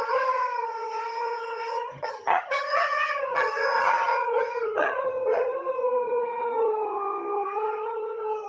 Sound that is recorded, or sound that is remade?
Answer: remade